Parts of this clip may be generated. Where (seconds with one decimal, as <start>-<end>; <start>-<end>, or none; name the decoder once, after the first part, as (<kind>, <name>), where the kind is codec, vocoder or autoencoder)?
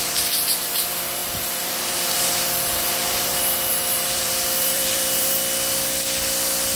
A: 1.2-5.3 (vocoder, BigVGAN v2)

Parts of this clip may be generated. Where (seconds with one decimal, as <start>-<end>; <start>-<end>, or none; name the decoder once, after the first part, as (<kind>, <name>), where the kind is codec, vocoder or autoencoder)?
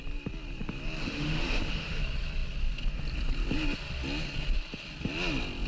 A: 1.0-2.0 (autoencoder, DAC-VAE)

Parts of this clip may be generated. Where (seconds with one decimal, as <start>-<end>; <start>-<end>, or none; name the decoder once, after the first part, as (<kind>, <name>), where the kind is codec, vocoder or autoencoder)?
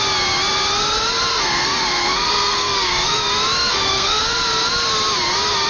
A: 1.3-3.2 (codec, SNAC); 3.7-4.2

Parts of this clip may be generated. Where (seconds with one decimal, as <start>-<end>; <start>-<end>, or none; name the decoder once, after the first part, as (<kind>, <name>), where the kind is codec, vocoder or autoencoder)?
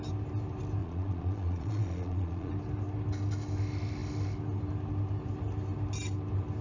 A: 0.8-2.5 (vocoder, Vocos)